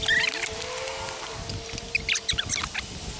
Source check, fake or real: real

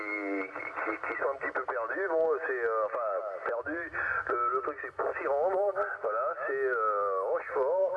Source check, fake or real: real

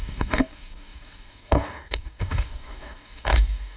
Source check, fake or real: fake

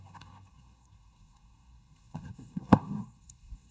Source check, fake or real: fake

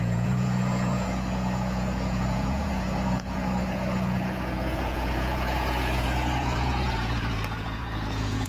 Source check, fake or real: fake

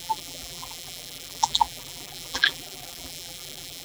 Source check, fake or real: fake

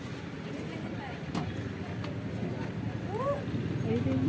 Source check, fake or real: real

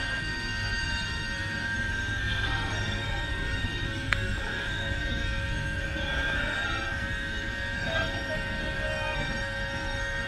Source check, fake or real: fake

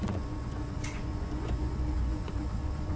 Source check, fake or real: fake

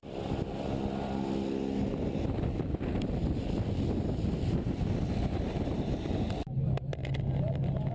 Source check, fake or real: real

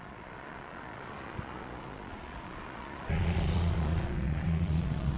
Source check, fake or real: fake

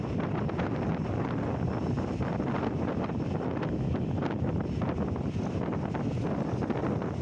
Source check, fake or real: real